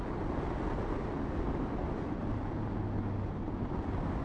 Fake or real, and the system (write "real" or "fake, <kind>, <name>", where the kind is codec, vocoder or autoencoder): real